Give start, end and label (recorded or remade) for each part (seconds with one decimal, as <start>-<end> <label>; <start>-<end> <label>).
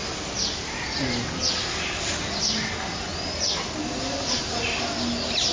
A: 0.0-5.5 recorded